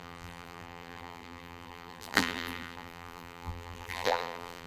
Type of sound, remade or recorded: remade